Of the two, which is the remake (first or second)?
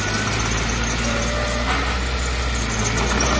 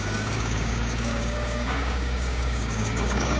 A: second